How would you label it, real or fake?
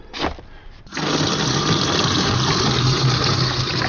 real